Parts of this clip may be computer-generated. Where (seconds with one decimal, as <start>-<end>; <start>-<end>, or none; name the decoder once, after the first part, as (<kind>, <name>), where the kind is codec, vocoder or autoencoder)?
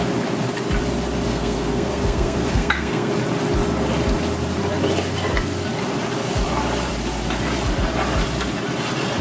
1.3-3.1 (codec, SNAC)